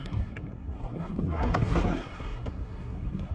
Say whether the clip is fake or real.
fake